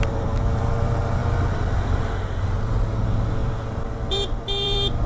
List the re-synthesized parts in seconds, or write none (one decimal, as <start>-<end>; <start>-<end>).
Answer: 3.4-5.1